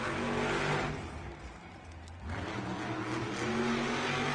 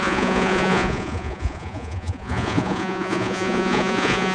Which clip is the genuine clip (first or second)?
first